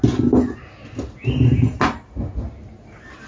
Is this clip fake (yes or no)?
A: no